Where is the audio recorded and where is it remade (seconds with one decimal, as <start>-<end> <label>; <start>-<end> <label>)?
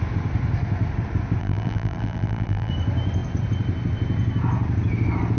0.0-1.4 recorded; 1.4-2.7 remade; 2.7-5.4 recorded